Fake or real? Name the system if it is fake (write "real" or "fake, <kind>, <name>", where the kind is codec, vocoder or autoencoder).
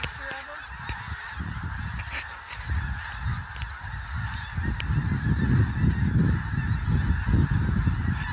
real